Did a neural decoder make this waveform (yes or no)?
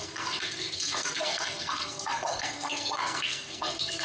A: yes